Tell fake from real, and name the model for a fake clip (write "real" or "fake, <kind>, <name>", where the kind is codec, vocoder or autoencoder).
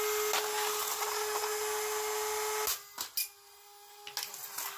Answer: real